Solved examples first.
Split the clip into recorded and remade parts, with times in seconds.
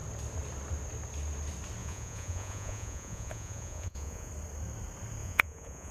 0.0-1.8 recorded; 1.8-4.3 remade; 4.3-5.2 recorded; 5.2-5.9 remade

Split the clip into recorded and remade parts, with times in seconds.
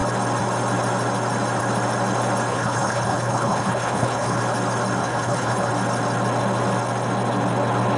0.0-2.5 recorded; 2.5-4.4 remade; 4.4-5.0 recorded; 5.0-5.7 remade; 5.7-8.0 recorded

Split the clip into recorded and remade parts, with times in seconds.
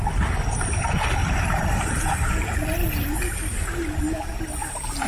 0.0-1.2 recorded; 1.2-2.0 remade; 2.0-3.5 recorded; 3.5-4.3 remade; 4.3-5.1 recorded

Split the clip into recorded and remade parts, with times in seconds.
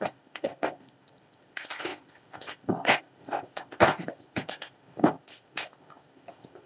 0.0-6.7 remade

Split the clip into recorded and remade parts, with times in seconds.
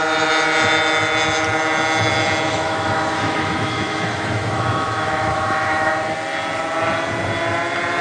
0.0-2.5 recorded; 2.5-5.9 remade; 5.9-8.0 recorded